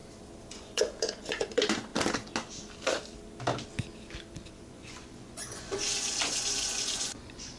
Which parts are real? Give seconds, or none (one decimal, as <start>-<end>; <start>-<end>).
0.0-0.5; 1.9-4.5